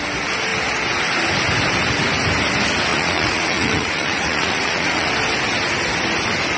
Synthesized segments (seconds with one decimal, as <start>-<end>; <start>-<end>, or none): 2.9-5.1